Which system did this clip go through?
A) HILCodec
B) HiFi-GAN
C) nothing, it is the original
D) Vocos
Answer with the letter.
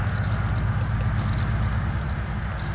C